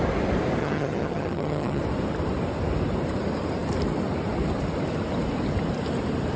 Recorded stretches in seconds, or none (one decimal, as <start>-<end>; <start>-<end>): 0.0-0.6; 1.8-6.4